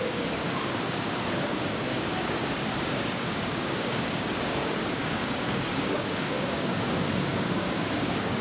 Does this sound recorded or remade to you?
remade